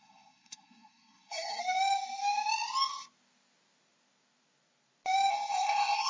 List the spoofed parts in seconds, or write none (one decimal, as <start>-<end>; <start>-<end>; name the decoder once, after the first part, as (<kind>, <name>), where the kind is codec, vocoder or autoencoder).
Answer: 0.0-1.6 (codec, SNAC); 5.3-6.1

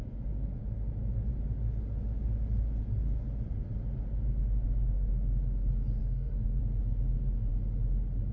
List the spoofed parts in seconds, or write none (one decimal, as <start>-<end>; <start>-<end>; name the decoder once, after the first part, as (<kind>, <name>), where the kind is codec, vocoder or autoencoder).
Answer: 6.0-6.6 (codec, SNAC)

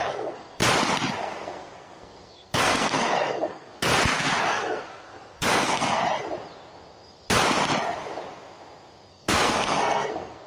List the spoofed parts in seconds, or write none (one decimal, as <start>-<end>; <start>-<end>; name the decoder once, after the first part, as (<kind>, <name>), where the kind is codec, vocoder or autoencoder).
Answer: 0.0-0.6 (codec, SNAC); 1.2-3.9; 4.5-6.0; 9.1-10.5